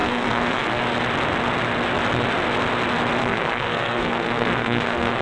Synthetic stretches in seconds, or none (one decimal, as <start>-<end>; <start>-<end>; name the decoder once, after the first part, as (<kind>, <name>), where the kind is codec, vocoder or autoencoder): 0.0-0.8 (codec, SNAC); 3.2-5.2